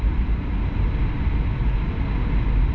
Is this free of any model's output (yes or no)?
yes